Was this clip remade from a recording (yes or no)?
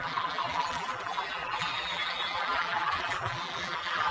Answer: yes